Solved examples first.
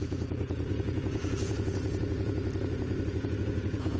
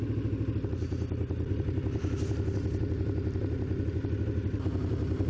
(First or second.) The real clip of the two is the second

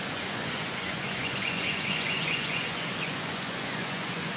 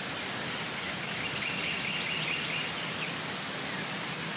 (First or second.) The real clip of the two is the second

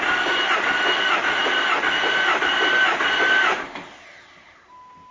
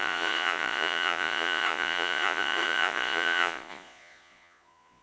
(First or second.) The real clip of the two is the first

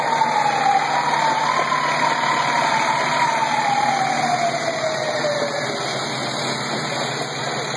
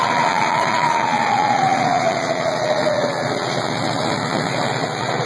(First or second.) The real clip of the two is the first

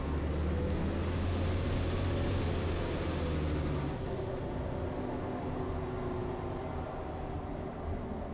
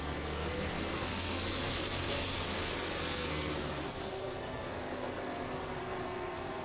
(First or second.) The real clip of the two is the first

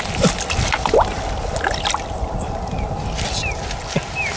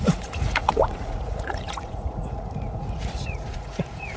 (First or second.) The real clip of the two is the first